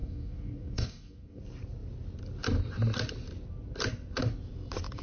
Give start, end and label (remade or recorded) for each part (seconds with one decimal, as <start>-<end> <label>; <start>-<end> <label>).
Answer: 0.0-1.4 remade; 1.4-5.0 recorded